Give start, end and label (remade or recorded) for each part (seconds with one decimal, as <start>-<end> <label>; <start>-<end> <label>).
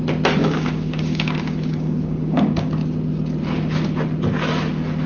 0.0-0.4 recorded; 0.4-2.7 remade; 2.7-5.1 recorded